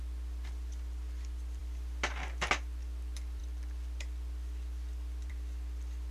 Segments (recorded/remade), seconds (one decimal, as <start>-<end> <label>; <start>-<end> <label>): 0.0-6.1 recorded